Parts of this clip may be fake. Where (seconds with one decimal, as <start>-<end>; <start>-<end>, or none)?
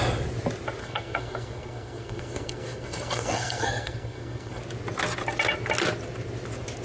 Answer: 0.8-4.6